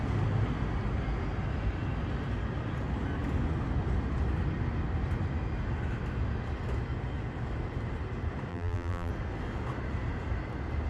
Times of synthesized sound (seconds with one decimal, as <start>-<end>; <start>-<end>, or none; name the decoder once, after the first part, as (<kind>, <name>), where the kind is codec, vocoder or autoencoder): 8.5-9.1 (vocoder, BigVGAN v2)